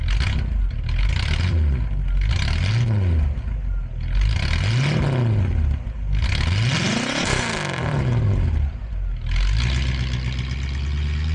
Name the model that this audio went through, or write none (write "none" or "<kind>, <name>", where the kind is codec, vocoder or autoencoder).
none